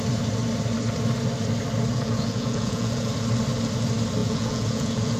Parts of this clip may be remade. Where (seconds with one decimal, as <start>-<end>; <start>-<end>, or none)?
1.9-3.1; 4.2-5.2